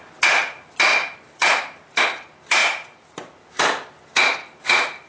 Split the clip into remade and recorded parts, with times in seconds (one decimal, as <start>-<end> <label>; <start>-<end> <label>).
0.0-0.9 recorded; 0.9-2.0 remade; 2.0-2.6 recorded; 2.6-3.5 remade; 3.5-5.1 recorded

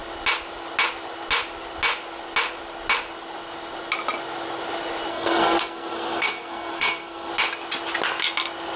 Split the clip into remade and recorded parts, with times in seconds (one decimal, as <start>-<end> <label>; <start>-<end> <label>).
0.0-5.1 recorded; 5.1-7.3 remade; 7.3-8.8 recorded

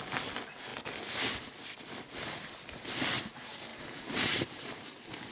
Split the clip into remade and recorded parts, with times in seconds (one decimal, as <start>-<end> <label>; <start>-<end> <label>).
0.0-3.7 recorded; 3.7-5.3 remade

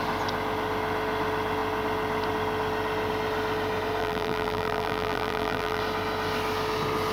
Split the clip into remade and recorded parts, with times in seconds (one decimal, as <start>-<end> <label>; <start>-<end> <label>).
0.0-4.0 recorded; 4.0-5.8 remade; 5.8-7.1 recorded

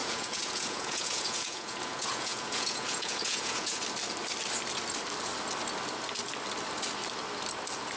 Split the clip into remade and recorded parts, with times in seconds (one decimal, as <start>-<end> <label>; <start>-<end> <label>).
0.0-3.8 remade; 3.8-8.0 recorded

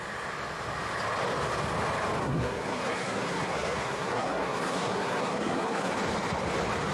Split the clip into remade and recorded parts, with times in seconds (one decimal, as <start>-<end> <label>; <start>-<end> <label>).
0.0-2.2 recorded; 2.2-5.9 remade; 5.9-6.9 recorded